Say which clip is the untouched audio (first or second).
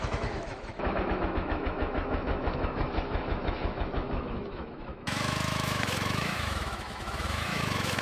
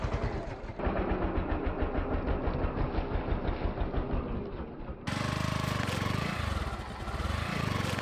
second